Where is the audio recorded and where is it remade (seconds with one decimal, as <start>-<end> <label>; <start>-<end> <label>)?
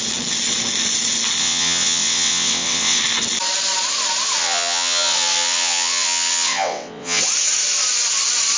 0.0-1.4 recorded; 1.4-3.0 remade; 3.0-4.4 recorded; 4.4-7.2 remade; 7.2-8.6 recorded